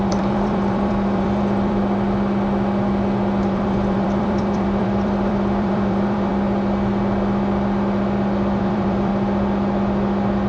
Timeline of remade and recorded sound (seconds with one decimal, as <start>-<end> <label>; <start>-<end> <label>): 0.0-1.8 remade; 1.8-3.4 recorded; 3.4-6.3 remade; 6.3-8.6 recorded; 8.6-9.1 remade; 9.1-10.5 recorded